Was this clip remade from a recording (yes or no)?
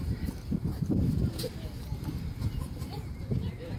yes